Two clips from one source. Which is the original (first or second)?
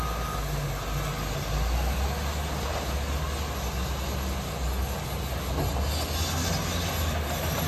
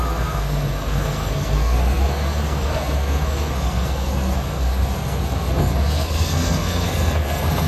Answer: first